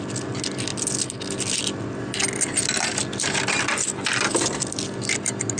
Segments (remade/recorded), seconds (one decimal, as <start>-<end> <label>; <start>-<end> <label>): 0.0-5.6 recorded